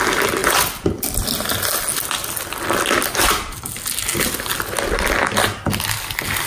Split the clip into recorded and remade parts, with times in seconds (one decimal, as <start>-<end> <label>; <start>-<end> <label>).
0.0-6.5 recorded